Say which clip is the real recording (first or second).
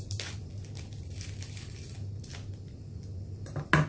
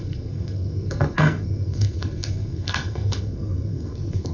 first